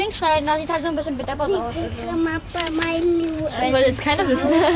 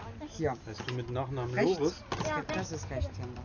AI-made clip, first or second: first